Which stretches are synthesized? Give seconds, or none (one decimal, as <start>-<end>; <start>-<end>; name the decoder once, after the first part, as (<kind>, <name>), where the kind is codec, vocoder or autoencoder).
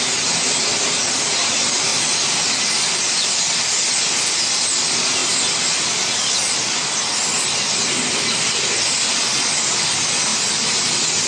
none